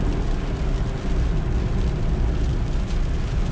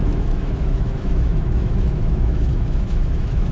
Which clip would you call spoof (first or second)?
second